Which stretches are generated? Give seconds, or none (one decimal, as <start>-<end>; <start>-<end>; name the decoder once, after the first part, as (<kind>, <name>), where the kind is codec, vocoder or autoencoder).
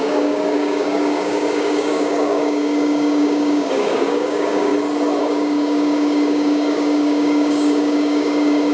0.0-4.7 (codec, DAC); 5.2-8.7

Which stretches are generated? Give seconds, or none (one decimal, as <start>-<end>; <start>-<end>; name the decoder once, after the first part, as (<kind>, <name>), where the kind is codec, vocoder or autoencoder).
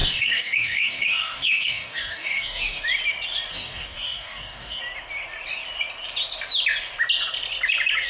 0.0-2.8 (codec, DAC); 3.5-4.8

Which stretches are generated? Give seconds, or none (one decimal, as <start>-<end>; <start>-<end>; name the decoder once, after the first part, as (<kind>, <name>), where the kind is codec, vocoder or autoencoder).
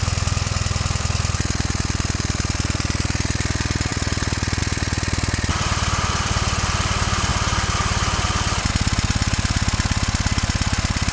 0.0-7.3 (vocoder, BigVGAN v2); 8.7-11.1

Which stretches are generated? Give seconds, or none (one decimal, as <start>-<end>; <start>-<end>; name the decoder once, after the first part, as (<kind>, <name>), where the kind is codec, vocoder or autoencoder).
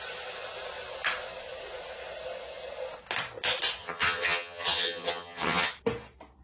3.8-5.7 (vocoder, HiFi-GAN)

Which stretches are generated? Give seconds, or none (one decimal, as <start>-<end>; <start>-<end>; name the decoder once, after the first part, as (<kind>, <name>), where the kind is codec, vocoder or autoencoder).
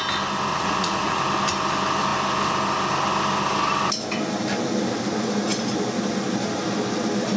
0.5-1.2 (vocoder, Vocos)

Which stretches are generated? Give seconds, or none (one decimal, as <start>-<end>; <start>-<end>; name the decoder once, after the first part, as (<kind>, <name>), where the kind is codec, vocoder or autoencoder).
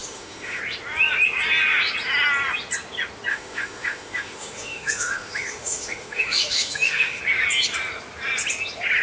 0.0-0.6 (autoencoder, DAC-VAE); 3.3-7.2